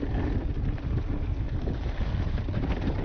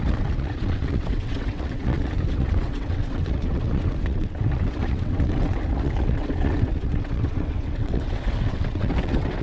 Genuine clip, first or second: first